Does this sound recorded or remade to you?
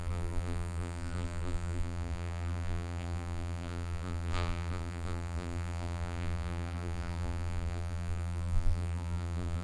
remade